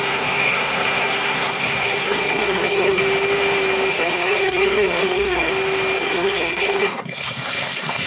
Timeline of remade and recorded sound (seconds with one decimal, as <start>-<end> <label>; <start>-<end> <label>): 0.0-3.0 remade; 3.0-3.9 recorded; 3.9-5.5 remade; 5.5-6.0 recorded; 6.0-8.1 remade